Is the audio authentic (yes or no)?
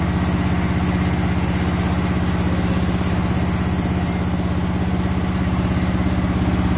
yes